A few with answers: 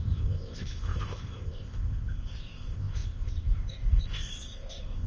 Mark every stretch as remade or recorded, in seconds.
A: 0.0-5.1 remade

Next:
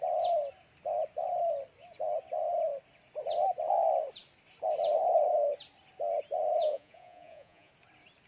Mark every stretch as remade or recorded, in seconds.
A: 0.0-6.6 recorded; 6.6-7.7 remade; 7.7-8.3 recorded

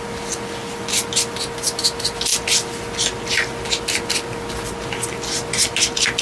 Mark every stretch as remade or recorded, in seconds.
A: 0.0-6.2 recorded

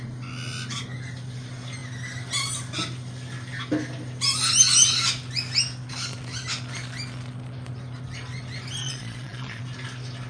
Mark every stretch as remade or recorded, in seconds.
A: 0.0-8.8 recorded; 8.8-9.6 remade; 9.6-10.3 recorded

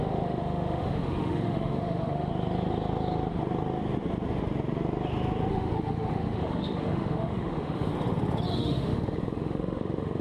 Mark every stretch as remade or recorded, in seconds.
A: 0.0-2.3 remade; 2.3-5.5 recorded; 5.5-7.9 remade; 7.9-8.5 recorded; 8.5-10.2 remade

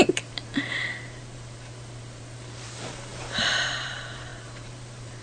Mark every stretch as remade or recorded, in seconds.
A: 0.0-5.2 remade

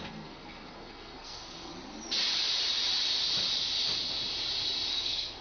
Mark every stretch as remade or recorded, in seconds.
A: 0.0-1.7 remade; 1.7-4.9 recorded; 4.9-5.4 remade